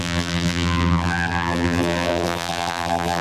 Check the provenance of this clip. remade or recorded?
remade